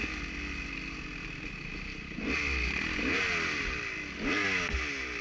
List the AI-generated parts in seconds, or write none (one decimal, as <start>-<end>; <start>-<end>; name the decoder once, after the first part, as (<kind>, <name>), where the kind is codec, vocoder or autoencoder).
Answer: none